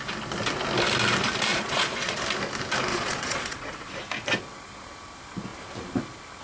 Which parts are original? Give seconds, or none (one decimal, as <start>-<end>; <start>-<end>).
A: 0.0-1.5; 2.2-2.9; 3.9-6.4

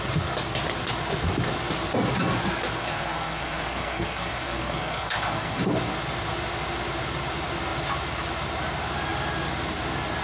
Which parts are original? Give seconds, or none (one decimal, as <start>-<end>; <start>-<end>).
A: 0.0-2.8; 5.6-10.2

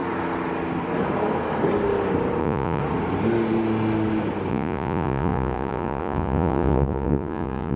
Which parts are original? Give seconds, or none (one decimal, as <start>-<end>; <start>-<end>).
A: 0.0-2.4; 2.8-4.5

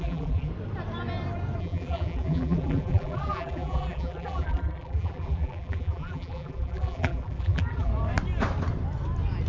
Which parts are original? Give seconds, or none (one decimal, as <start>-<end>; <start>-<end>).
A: 0.5-1.6; 7.9-9.5